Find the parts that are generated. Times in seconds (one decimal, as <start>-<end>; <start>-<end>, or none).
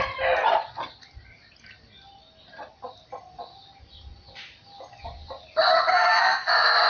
5.9-6.5